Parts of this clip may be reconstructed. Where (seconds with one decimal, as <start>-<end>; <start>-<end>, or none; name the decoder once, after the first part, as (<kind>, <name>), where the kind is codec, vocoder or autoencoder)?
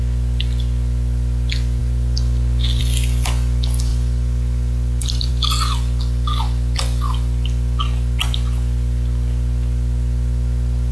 none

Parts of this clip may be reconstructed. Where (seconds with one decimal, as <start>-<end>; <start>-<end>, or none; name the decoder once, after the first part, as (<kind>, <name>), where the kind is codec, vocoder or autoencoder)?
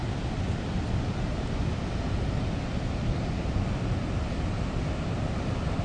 none